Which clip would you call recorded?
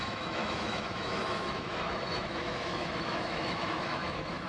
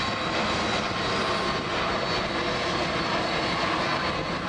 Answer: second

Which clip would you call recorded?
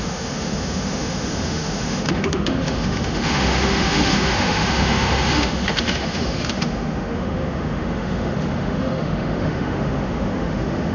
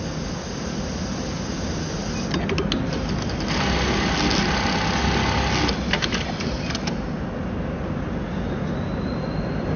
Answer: second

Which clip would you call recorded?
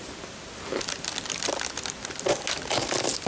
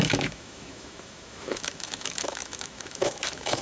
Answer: first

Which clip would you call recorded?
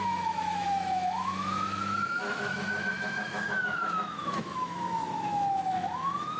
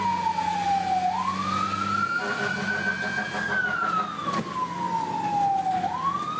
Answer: second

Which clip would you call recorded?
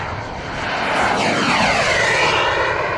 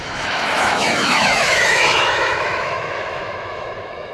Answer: first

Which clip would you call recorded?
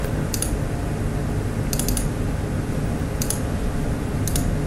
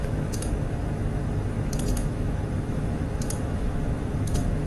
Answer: first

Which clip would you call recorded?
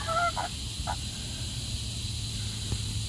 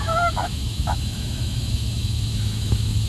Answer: first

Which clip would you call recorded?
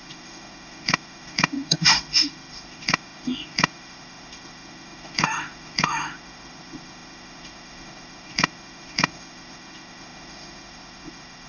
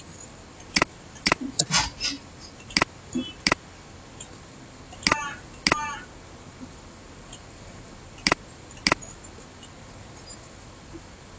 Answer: second